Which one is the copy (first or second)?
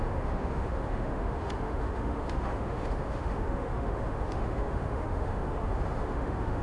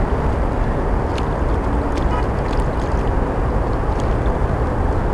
first